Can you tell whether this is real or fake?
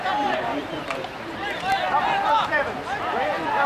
fake